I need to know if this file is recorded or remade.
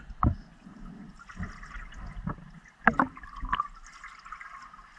recorded